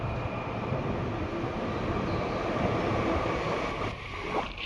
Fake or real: real